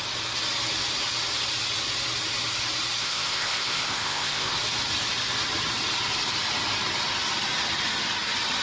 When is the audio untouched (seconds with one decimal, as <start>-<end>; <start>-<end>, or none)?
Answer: 0.0-3.0; 4.6-8.6